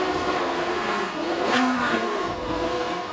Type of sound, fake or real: fake